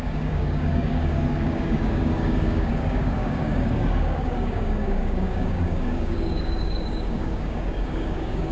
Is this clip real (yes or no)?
no